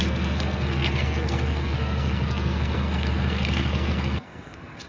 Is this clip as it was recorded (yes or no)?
no